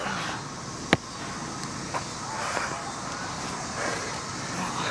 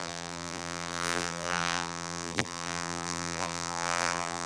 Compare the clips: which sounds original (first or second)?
first